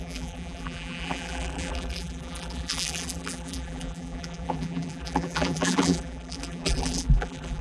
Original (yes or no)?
no